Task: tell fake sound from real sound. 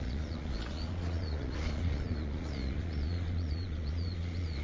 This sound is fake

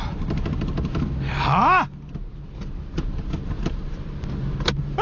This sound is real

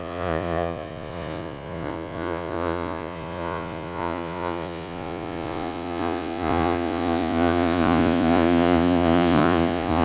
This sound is fake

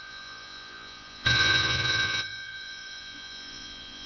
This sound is fake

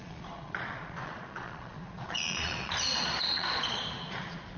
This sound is fake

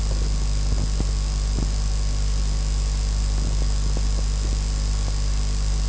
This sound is real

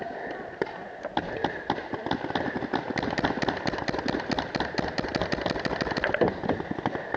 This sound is real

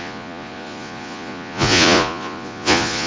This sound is fake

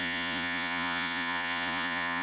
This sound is fake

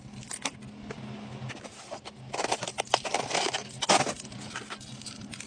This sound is real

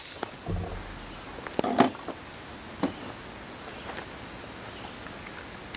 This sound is real